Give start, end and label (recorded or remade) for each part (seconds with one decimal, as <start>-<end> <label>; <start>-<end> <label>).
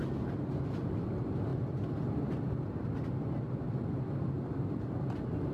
0.0-5.5 recorded